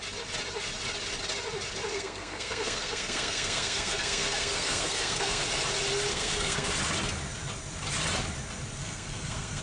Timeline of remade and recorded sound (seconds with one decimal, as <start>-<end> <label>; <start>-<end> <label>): 0.0-1.9 recorded; 1.9-5.4 remade; 5.4-6.1 recorded; 6.1-6.7 remade; 6.7-8.8 recorded; 8.8-9.6 remade